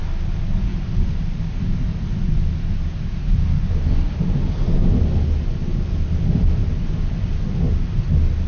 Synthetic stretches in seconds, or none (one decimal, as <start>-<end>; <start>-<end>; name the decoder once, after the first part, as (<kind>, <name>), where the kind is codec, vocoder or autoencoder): none